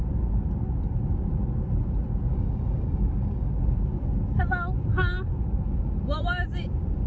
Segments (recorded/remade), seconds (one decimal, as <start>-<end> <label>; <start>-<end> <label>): 0.0-2.3 recorded; 2.3-3.5 remade; 3.5-7.1 recorded